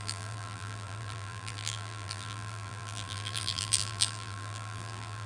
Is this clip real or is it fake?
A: fake